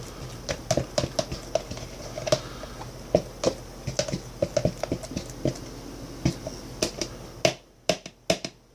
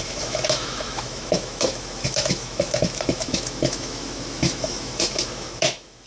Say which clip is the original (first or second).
first